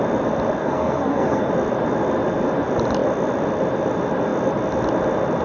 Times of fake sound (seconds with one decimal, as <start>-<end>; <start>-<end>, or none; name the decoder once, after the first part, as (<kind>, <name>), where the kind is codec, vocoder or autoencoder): 0.6-1.5 (codec, SNAC)

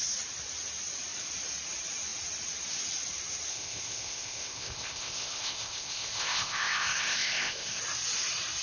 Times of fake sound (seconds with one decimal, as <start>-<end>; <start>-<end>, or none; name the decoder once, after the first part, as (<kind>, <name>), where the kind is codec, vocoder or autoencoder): 3.5-7.8 (codec, ZipCodec)

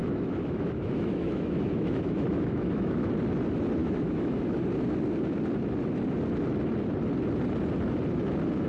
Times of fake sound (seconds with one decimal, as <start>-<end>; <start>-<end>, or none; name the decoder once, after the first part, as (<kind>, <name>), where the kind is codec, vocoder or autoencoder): 0.0-3.1 (autoencoder, DAC-VAE); 3.8-4.6

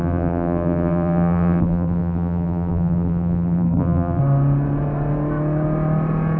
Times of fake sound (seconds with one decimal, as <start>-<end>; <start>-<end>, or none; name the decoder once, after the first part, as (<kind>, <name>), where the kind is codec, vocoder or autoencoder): 0.0-4.2 (vocoder, BigVGAN v2)

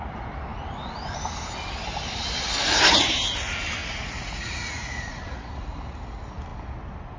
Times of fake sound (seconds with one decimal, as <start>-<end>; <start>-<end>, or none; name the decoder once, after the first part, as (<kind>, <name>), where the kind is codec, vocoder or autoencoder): 3.8-5.5 (vocoder, Vocos)

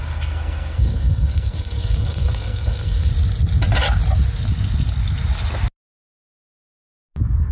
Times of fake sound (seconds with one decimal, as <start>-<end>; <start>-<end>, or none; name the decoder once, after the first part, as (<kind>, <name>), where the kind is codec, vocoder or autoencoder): 0.0-3.1 (codec, SNAC)